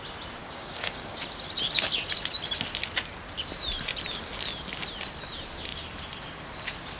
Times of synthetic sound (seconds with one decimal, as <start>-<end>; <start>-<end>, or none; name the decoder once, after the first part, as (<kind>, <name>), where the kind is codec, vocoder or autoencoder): 0.4-1.2 (codec, DAC)